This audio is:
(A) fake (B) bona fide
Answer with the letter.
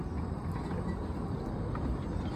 B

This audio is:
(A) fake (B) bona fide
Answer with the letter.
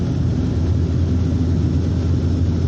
B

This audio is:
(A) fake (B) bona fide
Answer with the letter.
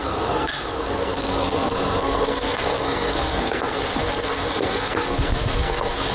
A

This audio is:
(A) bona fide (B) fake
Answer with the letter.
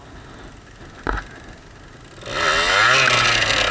A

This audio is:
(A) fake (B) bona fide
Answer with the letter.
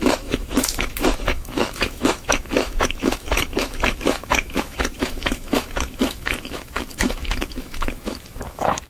A